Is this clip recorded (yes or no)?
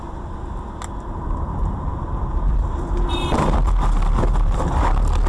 yes